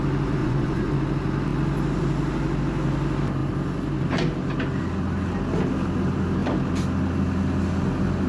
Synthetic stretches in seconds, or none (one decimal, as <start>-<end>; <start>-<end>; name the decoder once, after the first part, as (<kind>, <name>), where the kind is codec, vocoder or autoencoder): 0.4-1.0 (vocoder, Vocos)